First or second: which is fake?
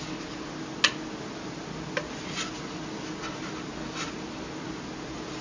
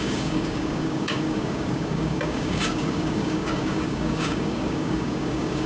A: second